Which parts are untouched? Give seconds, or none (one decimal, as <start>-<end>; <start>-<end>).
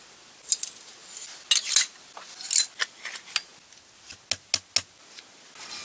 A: 0.0-5.8